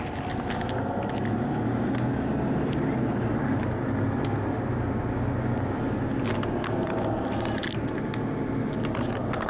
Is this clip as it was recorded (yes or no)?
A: yes